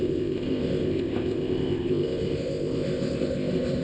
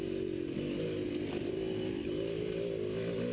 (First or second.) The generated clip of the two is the first